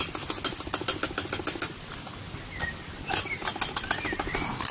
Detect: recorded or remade recorded